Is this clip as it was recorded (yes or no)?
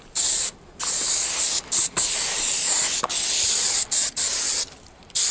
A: no